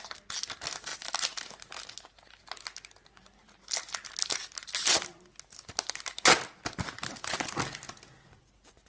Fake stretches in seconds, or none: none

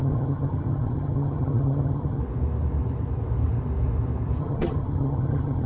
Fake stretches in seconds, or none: 0.0-2.2 (vocoder, HiFi-GAN); 4.4-5.7

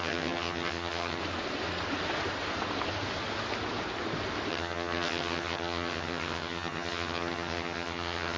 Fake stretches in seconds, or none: 0.0-1.2 (vocoder, HiFi-GAN); 4.5-8.4